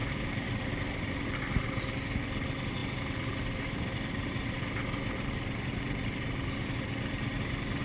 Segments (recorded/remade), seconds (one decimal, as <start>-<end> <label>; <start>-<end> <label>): 0.0-1.8 remade; 1.8-7.8 recorded